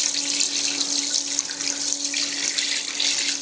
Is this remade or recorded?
recorded